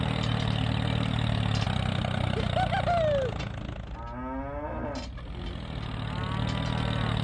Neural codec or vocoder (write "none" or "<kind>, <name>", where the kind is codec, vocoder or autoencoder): none